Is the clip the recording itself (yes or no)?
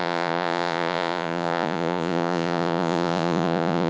no